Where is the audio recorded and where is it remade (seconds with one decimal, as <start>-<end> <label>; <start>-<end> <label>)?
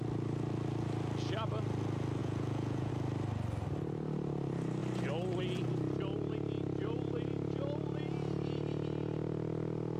0.0-2.2 recorded; 2.2-2.9 remade; 2.9-10.0 recorded